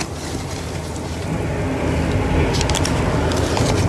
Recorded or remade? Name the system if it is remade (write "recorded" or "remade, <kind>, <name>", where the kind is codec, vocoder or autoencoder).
recorded